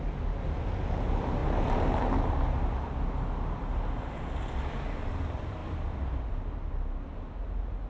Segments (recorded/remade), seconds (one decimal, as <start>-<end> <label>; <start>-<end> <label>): 0.0-7.9 recorded